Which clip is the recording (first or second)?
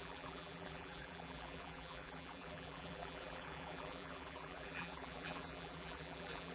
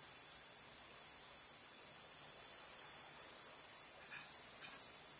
second